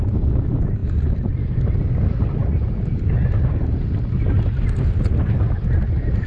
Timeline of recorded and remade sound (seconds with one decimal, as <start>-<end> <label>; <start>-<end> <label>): 0.0-6.3 recorded